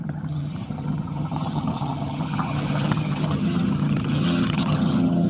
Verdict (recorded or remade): remade